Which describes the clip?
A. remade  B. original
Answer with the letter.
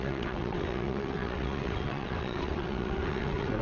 A